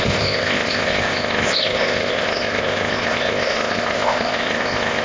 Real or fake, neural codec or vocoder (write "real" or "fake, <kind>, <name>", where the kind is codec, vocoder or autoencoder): fake, codec, ZipCodec